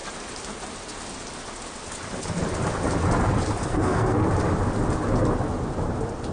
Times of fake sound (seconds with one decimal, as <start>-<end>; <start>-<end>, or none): 3.6-4.3